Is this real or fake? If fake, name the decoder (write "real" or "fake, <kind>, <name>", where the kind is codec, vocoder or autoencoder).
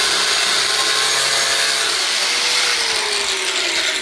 real